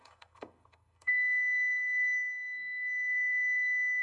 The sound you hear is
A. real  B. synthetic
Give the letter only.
B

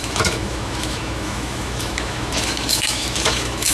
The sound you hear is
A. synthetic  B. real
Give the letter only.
A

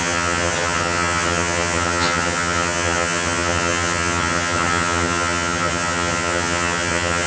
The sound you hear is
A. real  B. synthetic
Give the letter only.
B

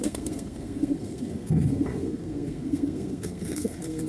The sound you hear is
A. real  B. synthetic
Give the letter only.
B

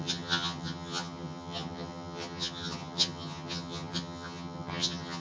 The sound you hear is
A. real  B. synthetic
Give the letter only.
B